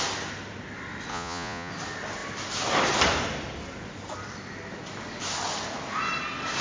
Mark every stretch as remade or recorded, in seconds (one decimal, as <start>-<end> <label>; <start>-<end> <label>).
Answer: 0.0-1.1 recorded; 1.1-1.7 remade; 1.7-6.6 recorded